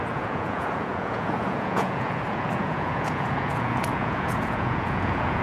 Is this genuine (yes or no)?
no